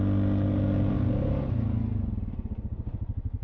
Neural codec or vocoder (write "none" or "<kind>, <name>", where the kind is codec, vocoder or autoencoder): none